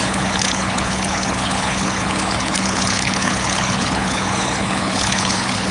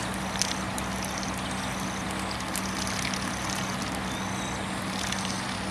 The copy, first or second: first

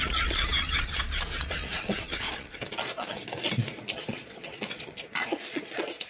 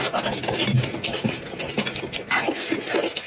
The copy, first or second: first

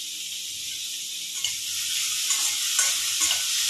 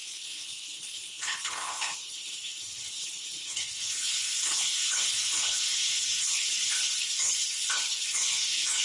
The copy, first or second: second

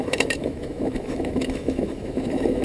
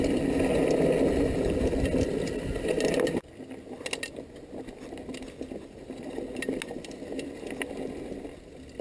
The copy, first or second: first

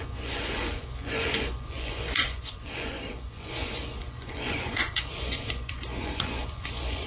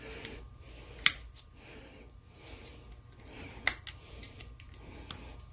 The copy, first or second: first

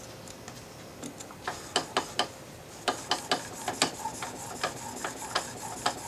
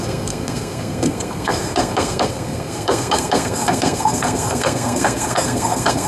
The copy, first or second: second